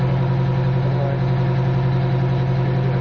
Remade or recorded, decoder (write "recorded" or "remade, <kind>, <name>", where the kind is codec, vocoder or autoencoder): recorded